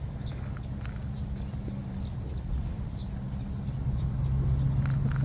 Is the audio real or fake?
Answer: real